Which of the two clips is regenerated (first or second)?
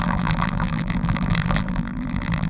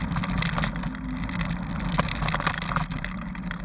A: first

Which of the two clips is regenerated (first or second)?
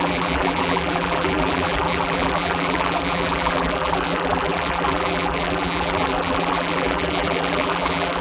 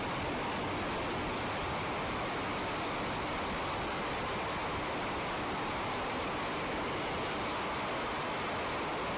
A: first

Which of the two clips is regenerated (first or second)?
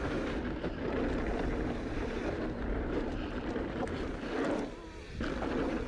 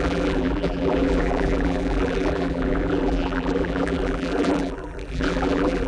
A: second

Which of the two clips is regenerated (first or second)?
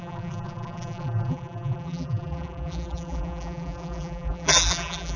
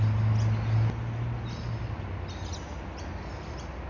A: first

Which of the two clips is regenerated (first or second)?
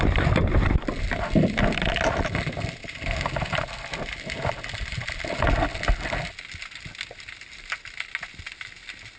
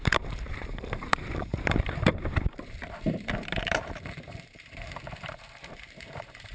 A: second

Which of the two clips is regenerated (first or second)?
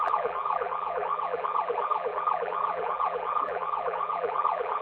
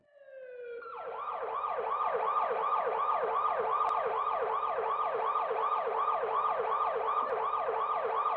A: first